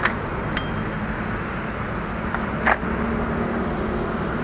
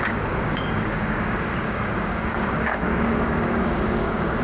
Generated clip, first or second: second